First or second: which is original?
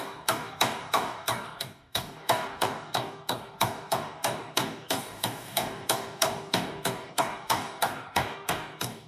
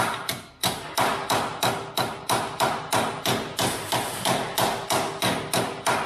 second